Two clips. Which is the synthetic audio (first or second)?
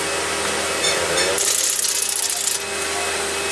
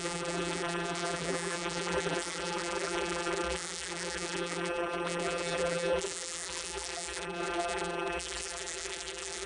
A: second